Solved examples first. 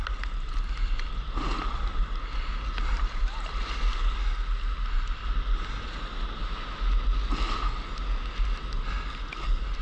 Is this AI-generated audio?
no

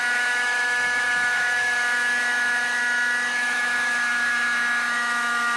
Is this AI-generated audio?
yes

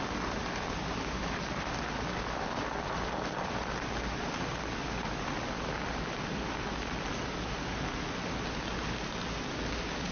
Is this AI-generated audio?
no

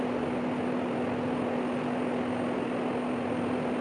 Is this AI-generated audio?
no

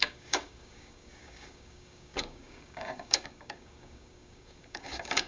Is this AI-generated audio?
yes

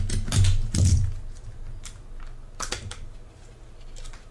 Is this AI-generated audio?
no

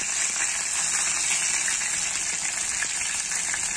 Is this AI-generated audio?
no